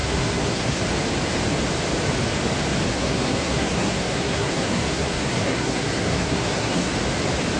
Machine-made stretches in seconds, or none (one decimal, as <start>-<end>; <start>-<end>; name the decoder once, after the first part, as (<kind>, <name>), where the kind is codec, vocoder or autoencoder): 0.0-0.8 (codec, SNAC); 2.9-6.9